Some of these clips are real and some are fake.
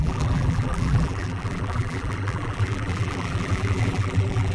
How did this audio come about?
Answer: fake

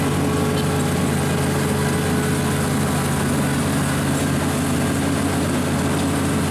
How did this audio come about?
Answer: real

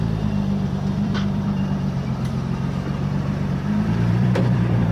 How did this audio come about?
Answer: fake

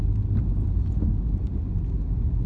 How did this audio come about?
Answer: real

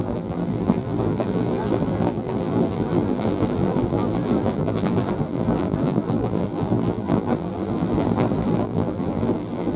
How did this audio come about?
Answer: fake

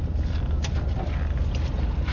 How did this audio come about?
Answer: fake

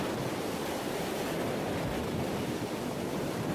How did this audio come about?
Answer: fake